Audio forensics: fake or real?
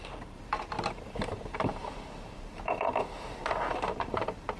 fake